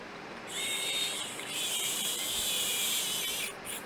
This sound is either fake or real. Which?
fake